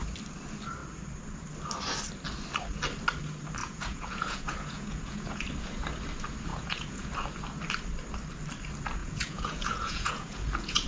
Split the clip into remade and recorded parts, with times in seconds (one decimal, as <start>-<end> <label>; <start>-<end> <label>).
0.0-3.6 recorded; 3.6-5.4 remade; 5.4-6.5 recorded; 6.5-7.1 remade; 7.1-9.0 recorded; 9.0-10.9 remade